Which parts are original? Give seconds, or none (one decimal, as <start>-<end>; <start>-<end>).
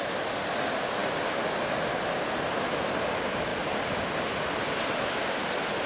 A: 0.0-5.9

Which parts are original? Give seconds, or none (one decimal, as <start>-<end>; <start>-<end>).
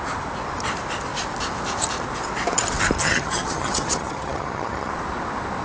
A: 0.0-3.0; 4.9-5.6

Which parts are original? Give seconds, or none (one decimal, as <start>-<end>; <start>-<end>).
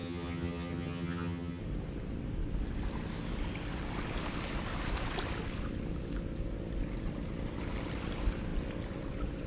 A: 1.6-9.5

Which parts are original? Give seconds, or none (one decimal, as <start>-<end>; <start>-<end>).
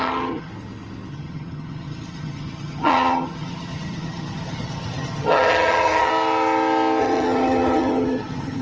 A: 0.5-1.1; 6.1-7.0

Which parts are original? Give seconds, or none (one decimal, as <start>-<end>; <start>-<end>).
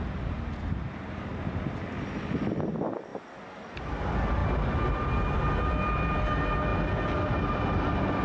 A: 0.0-8.2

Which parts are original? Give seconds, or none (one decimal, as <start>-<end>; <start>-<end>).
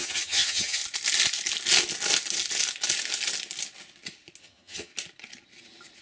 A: 0.8-4.4; 4.9-6.0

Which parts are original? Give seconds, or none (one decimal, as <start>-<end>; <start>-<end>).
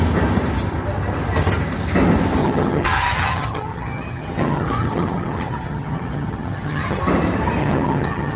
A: 0.0-2.4; 7.0-7.6